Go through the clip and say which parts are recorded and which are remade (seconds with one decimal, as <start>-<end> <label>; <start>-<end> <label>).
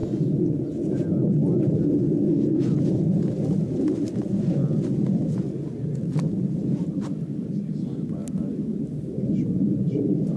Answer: 0.0-0.8 recorded; 0.8-8.2 remade; 8.2-8.8 recorded; 8.8-10.4 remade